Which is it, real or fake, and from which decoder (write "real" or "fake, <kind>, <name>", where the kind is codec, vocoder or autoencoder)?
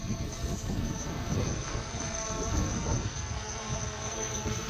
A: fake, codec, SNAC